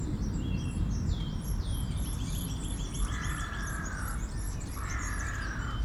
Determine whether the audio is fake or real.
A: fake